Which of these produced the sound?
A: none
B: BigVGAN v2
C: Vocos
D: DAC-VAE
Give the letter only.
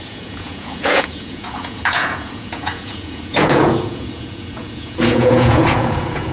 C